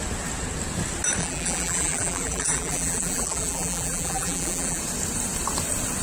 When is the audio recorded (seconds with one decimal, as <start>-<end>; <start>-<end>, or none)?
0.0-1.2; 4.8-6.0